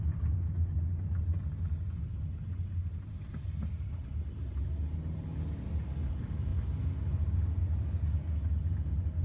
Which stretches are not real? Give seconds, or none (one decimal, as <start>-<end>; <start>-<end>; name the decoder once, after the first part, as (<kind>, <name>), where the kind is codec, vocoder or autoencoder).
none